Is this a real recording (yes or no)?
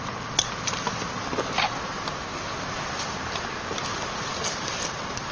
yes